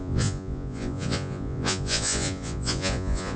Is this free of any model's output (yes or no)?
no